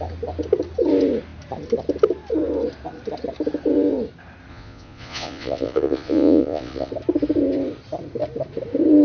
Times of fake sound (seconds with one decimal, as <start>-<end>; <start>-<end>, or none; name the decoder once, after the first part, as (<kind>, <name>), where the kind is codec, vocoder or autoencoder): 4.5-6.9 (vocoder, Vocos)